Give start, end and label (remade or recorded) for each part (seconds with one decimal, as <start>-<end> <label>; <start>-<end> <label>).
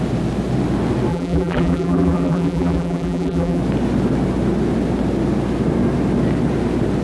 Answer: 0.0-1.1 recorded; 1.1-3.6 remade; 3.6-7.0 recorded